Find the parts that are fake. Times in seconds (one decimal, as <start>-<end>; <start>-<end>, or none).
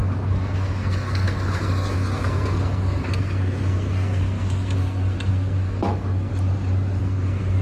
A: 0.0-6.3; 7.0-7.6